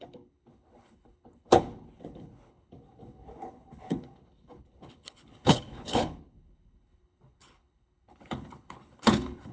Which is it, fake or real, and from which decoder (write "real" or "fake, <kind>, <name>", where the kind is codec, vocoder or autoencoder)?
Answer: fake, codec, HILCodec